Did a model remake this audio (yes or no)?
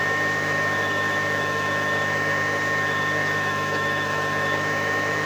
yes